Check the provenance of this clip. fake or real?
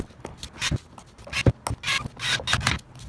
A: real